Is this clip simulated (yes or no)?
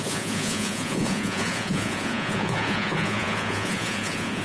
yes